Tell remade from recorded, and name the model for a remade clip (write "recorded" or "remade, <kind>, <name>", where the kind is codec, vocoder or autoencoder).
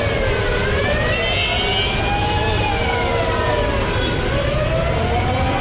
recorded